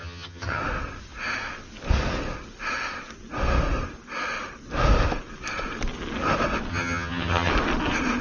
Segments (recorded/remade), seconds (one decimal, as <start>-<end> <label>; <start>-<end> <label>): 0.0-0.6 remade; 0.6-6.7 recorded; 6.7-7.5 remade; 7.5-8.2 recorded